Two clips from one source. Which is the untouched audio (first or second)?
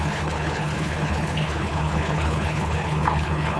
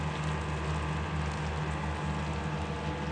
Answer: second